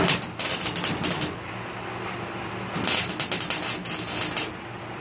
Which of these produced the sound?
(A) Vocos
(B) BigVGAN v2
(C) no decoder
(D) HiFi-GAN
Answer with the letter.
C